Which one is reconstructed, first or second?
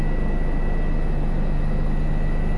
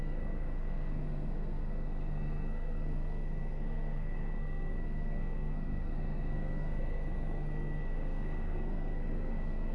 second